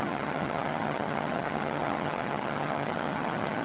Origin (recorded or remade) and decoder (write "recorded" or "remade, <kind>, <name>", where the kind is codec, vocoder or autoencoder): remade, vocoder, HiFi-GAN